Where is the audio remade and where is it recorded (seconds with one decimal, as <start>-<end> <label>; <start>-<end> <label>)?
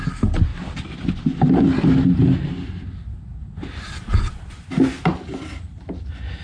0.0-6.4 recorded